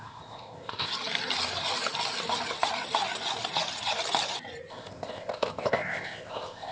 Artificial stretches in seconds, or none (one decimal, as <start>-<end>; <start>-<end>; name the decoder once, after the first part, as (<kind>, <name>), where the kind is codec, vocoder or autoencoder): 0.0-0.9 (codec, ZipCodec); 4.7-6.7